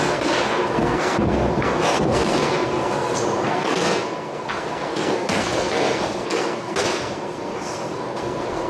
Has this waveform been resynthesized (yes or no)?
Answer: yes